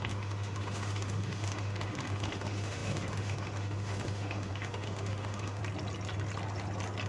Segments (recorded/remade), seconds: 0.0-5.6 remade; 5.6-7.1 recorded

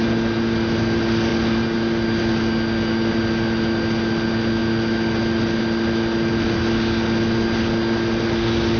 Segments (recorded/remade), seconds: 0.0-8.8 recorded

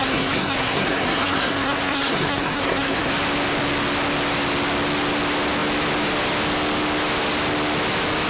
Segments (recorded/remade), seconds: 0.0-3.1 remade; 3.1-8.3 recorded

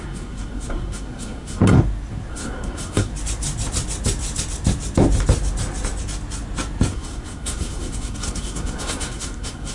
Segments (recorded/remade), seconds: 0.0-1.6 remade; 1.6-2.3 recorded; 2.3-3.1 remade; 3.1-6.9 recorded; 6.9-9.7 remade

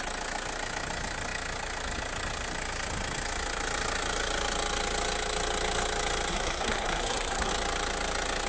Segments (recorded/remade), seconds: 0.0-6.3 recorded; 6.3-7.5 remade; 7.5-8.5 recorded

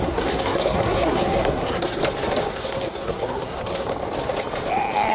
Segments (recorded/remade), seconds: 0.0-2.0 remade; 2.0-2.5 recorded; 2.5-3.9 remade; 3.9-5.1 recorded

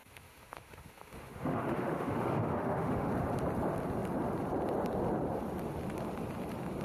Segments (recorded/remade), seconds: 0.0-3.1 remade; 3.1-6.8 recorded